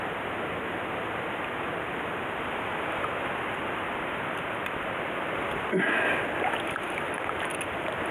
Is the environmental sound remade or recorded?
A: recorded